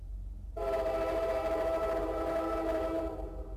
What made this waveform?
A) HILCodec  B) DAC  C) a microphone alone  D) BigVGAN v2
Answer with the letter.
D